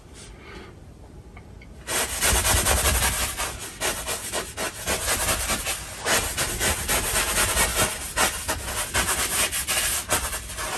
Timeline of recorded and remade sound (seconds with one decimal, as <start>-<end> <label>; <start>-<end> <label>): 0.0-10.8 recorded